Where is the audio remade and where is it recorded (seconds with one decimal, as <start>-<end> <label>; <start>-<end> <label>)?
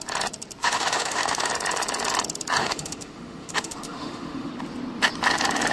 0.0-0.6 recorded; 0.6-1.5 remade; 1.5-2.6 recorded; 2.6-4.5 remade; 4.5-5.7 recorded